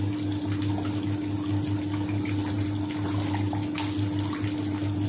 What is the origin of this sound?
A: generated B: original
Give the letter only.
B